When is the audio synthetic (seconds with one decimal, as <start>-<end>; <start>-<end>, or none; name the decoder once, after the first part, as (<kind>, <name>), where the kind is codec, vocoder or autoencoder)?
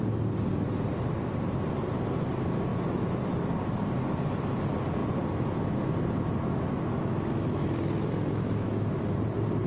2.7-3.5 (autoencoder, DAC-VAE); 6.5-8.9